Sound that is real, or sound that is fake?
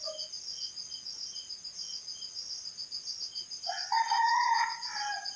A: real